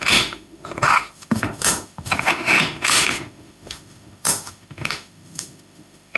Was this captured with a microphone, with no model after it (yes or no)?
no